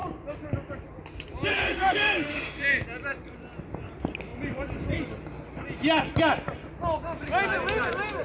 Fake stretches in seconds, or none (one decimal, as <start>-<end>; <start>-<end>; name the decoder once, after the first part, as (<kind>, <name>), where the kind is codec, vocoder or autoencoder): 1.5-2.6 (autoencoder, DAC-VAE)